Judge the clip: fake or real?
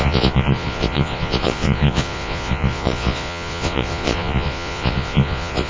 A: fake